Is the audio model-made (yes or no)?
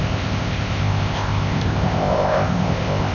yes